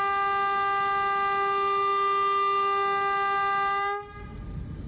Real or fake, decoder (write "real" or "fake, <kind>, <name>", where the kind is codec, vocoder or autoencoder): real